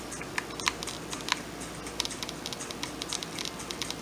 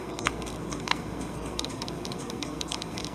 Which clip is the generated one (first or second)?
second